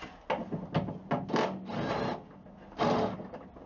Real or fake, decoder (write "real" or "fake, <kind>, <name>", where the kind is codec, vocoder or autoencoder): real